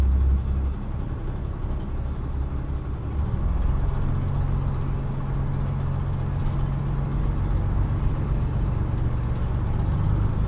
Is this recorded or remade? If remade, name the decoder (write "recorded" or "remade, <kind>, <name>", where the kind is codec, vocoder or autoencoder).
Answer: recorded